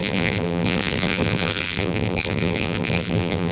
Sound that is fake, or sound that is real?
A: fake